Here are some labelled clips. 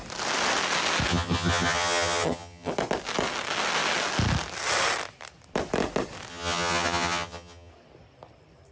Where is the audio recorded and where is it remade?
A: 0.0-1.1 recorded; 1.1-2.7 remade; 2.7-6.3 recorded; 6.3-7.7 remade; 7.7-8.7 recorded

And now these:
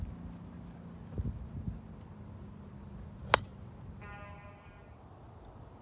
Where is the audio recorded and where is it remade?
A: 0.0-5.8 recorded

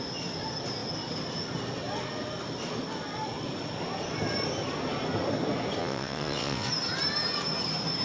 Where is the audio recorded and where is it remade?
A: 0.0-5.8 recorded; 5.8-6.7 remade; 6.7-8.0 recorded

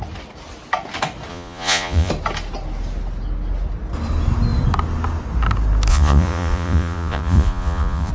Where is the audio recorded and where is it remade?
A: 0.0-1.3 recorded; 1.3-2.1 remade; 2.1-5.9 recorded; 5.9-8.1 remade